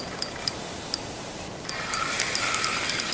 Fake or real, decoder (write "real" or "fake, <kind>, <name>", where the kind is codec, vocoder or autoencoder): real